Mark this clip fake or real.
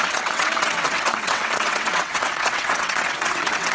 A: fake